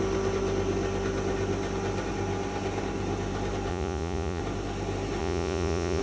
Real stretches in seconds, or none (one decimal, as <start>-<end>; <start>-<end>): 0.0-3.7; 4.4-5.2